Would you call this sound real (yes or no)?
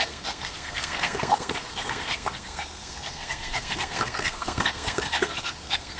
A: no